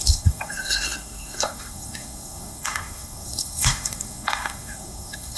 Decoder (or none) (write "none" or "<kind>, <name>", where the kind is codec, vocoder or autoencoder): codec, SNAC